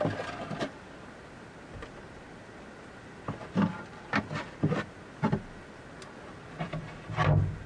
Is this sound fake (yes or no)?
no